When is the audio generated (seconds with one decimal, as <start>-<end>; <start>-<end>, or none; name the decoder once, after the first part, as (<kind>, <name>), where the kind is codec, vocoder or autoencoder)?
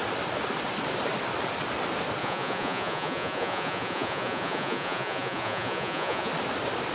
2.2-6.3 (vocoder, Vocos)